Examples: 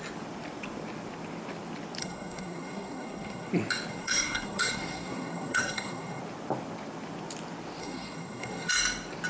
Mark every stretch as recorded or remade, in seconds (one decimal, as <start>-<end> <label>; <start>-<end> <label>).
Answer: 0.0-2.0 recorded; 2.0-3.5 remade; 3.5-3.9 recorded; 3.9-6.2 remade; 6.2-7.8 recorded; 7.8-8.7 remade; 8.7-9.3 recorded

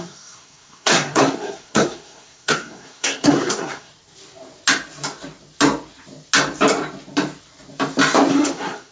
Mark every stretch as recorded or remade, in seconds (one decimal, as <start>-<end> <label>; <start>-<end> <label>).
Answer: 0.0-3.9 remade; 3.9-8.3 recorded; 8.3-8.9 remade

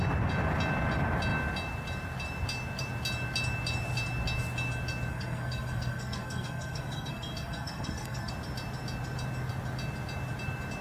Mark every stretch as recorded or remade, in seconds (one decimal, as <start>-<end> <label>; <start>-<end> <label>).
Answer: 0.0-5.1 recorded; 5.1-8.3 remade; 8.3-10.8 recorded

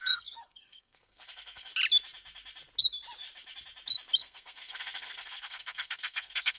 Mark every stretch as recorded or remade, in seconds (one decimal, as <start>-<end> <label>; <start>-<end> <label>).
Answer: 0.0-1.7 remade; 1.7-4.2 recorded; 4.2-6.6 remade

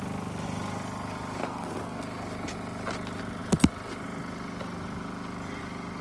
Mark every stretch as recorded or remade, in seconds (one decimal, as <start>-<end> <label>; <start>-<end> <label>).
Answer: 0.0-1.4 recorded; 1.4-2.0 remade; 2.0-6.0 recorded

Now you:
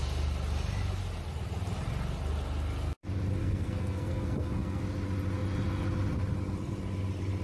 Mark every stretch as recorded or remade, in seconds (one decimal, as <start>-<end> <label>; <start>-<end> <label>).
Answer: 0.0-3.4 recorded; 3.4-4.8 remade; 4.8-7.4 recorded

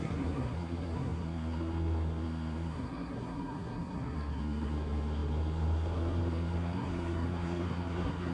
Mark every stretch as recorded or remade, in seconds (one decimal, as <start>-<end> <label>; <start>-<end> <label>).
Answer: 0.0-8.3 remade

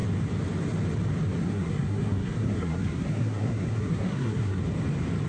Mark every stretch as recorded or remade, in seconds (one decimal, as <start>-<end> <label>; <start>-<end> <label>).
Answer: 0.0-1.4 recorded; 1.4-4.6 remade; 4.6-5.3 recorded